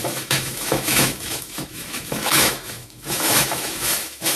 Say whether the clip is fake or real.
fake